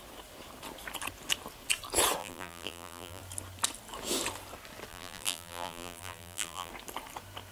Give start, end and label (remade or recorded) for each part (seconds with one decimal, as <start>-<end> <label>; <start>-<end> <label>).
0.0-2.2 recorded; 2.2-3.2 remade; 3.2-4.9 recorded; 4.9-6.7 remade; 6.7-7.5 recorded